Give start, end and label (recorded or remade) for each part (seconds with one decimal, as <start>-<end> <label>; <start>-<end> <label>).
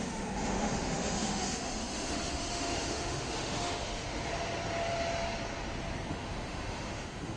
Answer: 0.0-4.2 remade; 4.2-6.1 recorded; 6.1-7.4 remade